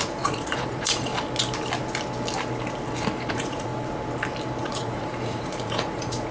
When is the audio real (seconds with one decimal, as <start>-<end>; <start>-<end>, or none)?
1.1-3.3; 3.7-4.6